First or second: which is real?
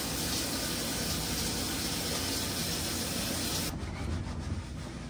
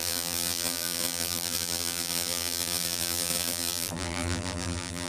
first